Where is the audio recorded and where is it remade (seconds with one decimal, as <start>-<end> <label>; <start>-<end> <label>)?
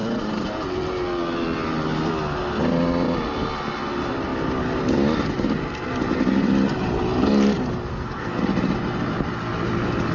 0.0-7.9 recorded; 7.9-8.4 remade; 8.4-10.1 recorded